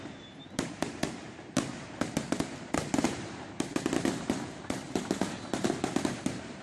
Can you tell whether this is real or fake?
fake